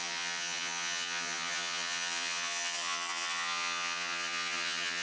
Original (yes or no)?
no